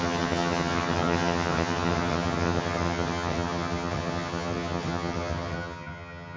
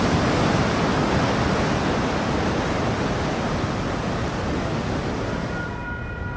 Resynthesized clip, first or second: first